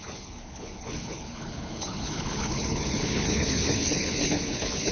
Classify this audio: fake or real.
fake